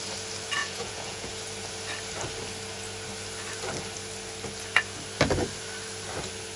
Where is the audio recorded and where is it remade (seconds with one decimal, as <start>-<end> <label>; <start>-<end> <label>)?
0.0-0.6 recorded; 0.6-1.3 remade; 1.3-6.6 recorded